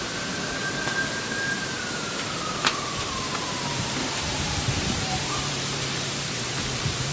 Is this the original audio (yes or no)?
no